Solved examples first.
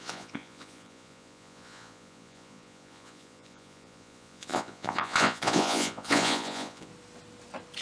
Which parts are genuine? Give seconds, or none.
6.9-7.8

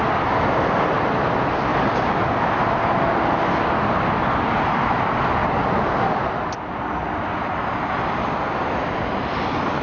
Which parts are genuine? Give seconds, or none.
0.0-9.8

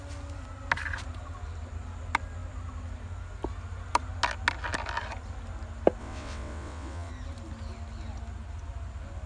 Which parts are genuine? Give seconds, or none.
0.0-6.0; 7.1-9.3

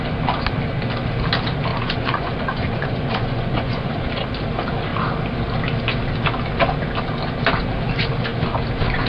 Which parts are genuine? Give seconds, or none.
0.0-1.7; 3.9-9.1

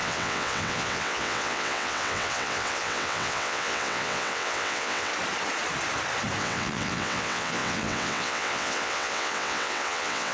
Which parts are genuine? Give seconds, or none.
5.1-6.4